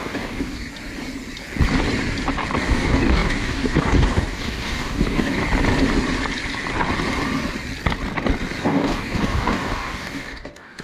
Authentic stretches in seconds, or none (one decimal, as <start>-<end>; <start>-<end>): 0.7-2.6; 5.4-8.6